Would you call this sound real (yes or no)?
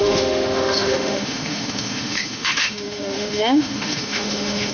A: no